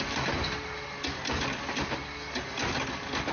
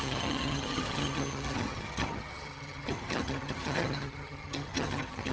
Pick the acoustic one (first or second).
first